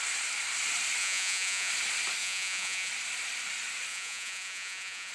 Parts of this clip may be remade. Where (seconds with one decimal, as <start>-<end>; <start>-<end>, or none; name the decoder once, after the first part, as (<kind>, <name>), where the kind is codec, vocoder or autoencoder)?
1.0-1.7 (vocoder, Vocos); 2.2-2.9; 3.9-5.1